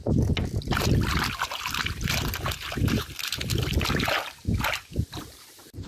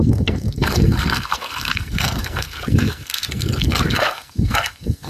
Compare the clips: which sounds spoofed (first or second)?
second